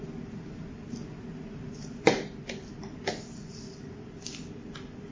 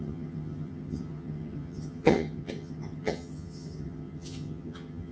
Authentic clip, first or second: first